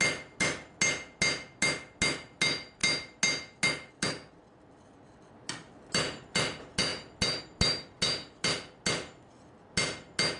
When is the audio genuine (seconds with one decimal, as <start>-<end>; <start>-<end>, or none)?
0.0-10.4